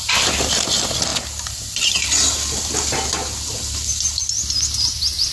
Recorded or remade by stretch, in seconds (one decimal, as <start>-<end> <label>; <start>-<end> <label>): 0.0-5.3 recorded

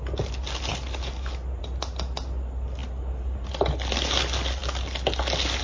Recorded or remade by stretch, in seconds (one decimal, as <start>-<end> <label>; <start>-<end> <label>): 0.0-5.6 recorded

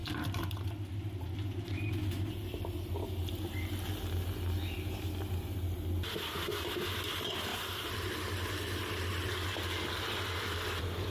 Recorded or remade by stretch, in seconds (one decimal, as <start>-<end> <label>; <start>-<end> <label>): 0.0-11.1 recorded

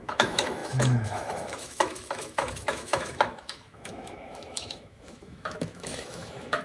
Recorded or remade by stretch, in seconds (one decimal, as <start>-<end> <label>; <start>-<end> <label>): 0.0-6.6 remade

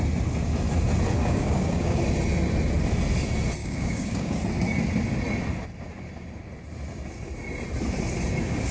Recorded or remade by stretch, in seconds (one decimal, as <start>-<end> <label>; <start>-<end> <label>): 0.0-1.2 recorded; 1.2-2.0 remade; 2.0-3.6 recorded; 3.6-4.4 remade; 4.4-8.7 recorded

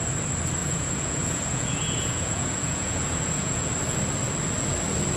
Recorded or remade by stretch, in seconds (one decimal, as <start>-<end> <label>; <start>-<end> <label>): 0.0-0.6 recorded; 0.6-3.7 remade; 3.7-5.2 recorded

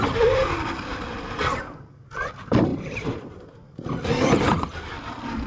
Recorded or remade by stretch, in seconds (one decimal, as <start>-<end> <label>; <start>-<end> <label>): 0.0-2.7 recorded; 2.7-3.4 remade; 3.4-5.5 recorded